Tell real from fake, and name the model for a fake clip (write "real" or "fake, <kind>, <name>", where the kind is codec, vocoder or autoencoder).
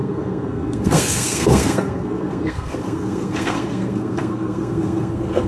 fake, codec, SNAC